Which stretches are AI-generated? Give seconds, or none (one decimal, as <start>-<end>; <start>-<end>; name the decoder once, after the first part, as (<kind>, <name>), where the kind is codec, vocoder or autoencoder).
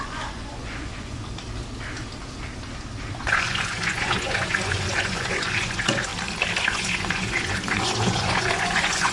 0.0-1.2 (vocoder, Vocos); 3.2-6.1; 6.6-9.1